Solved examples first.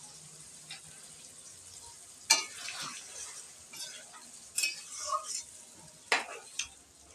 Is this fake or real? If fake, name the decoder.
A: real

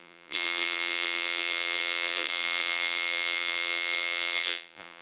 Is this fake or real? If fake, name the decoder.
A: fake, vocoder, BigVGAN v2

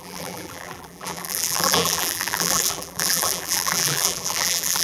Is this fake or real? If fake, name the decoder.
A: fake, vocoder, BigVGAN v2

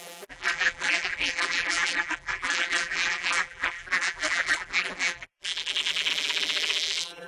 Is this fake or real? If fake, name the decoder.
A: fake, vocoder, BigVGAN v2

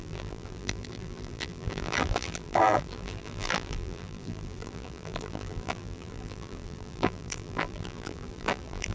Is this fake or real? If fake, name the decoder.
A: fake, vocoder, BigVGAN v2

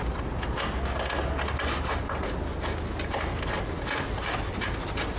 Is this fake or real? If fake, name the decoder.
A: real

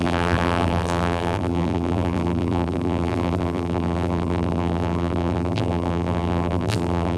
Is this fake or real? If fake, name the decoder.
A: fake, vocoder, BigVGAN v2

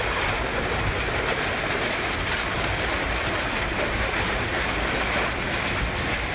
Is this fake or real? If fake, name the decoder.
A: real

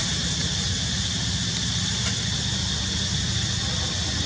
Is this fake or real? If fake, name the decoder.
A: real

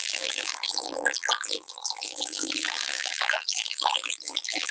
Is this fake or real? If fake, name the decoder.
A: fake, vocoder, BigVGAN v2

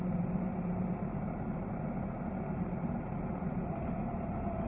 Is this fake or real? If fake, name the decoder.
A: fake, vocoder, BigVGAN v2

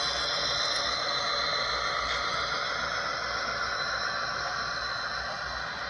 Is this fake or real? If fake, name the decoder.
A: real